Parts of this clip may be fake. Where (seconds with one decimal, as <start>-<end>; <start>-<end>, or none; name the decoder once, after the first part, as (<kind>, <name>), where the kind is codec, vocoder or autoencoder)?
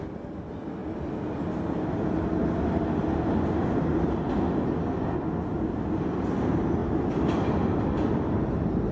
6.8-8.9 (vocoder, BigVGAN v2)